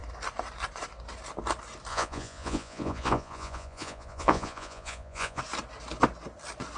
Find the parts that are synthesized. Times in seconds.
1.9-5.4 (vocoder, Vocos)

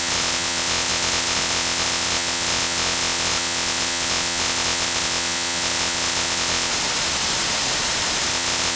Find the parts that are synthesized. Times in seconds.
0.0-6.7 (vocoder, WaveNeXt); 8.3-8.8